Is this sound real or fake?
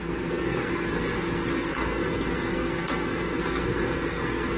fake